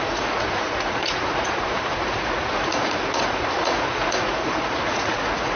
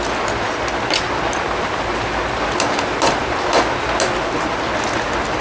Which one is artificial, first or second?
first